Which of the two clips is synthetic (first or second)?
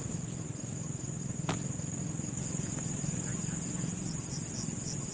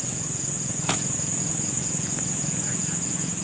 second